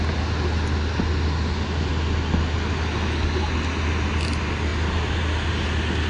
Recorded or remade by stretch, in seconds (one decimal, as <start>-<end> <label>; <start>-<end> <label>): 0.0-6.1 recorded